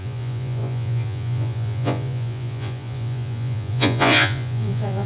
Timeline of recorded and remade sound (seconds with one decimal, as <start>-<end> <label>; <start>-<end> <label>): 0.0-5.1 remade